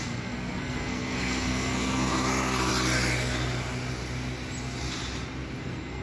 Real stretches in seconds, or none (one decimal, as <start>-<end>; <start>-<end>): 2.7-5.6